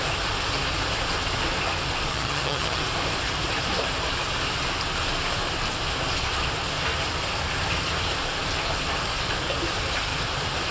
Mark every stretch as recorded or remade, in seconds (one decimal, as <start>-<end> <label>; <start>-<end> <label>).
0.0-2.1 recorded; 2.1-2.8 remade; 2.8-10.7 recorded

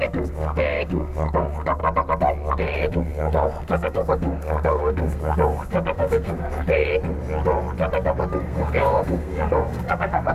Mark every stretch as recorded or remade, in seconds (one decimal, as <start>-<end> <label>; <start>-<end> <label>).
0.0-1.8 remade; 1.8-2.5 recorded; 2.5-6.9 remade; 6.9-8.4 recorded; 8.4-10.3 remade

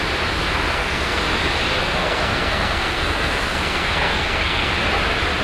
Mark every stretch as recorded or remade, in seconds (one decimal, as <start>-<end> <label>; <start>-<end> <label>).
0.0-0.7 recorded; 0.7-1.2 remade; 1.2-1.8 recorded; 1.8-4.7 remade; 4.7-5.4 recorded

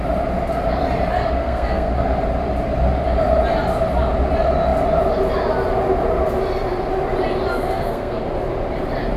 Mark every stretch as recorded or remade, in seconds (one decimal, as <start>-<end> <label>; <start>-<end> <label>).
0.0-1.4 recorded; 1.4-1.9 remade; 1.9-7.5 recorded; 7.5-8.2 remade; 8.2-9.2 recorded

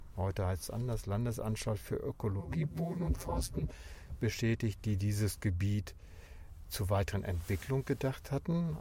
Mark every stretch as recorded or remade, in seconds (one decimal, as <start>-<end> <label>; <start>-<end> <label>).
0.0-2.4 recorded; 2.4-3.7 remade; 3.7-8.8 recorded

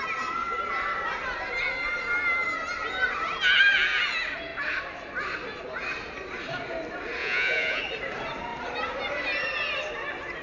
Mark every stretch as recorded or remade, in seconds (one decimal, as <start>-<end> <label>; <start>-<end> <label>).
0.0-7.2 recorded; 7.2-7.8 remade; 7.8-10.4 recorded